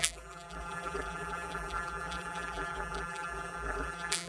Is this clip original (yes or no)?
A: no